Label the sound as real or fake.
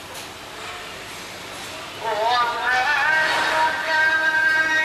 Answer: real